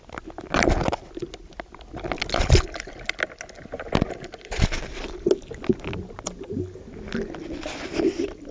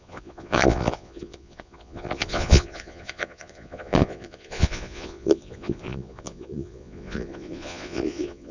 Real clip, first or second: first